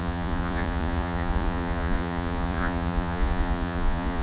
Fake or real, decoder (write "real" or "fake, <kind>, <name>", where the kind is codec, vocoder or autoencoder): fake, vocoder, Vocos